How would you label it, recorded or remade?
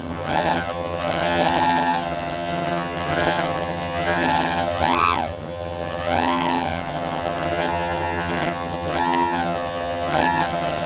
remade